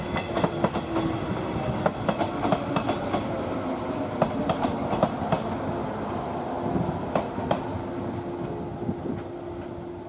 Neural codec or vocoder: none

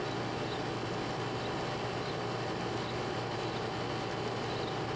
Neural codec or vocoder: none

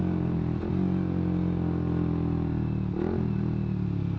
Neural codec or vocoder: none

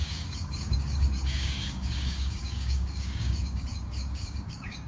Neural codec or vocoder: codec, DAC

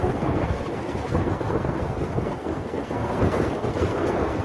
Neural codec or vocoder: codec, SNAC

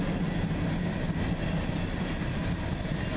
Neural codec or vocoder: none